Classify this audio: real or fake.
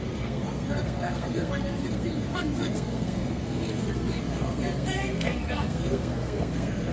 fake